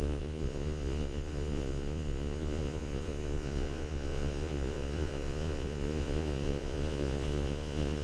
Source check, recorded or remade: remade